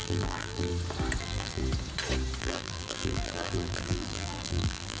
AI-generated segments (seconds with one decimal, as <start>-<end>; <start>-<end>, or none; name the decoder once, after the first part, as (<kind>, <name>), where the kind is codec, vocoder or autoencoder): 0.0-0.7 (vocoder, BigVGAN v2); 1.2-1.6; 2.4-5.0